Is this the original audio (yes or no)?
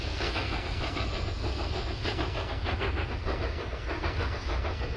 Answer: no